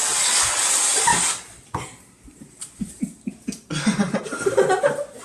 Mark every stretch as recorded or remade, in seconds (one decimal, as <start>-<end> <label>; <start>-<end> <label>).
0.0-5.2 recorded